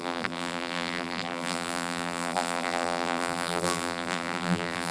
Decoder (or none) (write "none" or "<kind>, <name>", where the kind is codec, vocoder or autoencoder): vocoder, BigVGAN v2